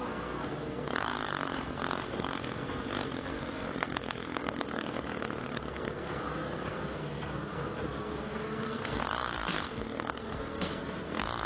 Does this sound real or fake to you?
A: fake